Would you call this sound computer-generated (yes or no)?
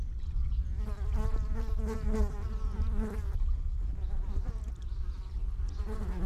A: no